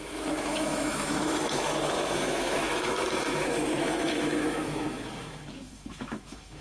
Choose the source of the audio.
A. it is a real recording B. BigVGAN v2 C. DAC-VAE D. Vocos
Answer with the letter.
C